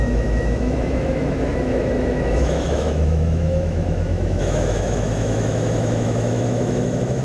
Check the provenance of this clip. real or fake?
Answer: fake